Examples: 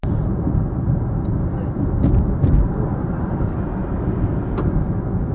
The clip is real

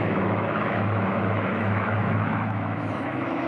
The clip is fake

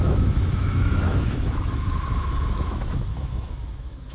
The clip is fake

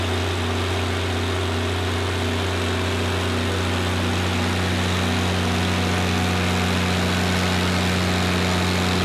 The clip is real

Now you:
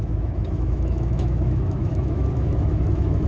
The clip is fake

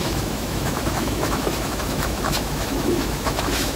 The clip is fake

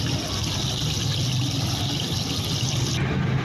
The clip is real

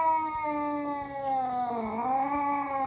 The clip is real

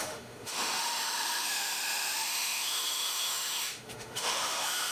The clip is fake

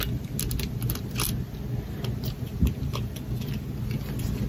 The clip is real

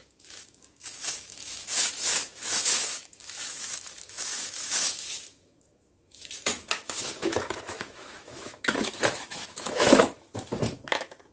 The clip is fake